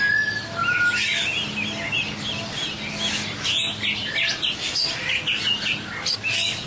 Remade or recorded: recorded